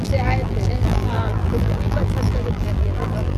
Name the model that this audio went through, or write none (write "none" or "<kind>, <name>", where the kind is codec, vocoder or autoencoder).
vocoder, BigVGAN v2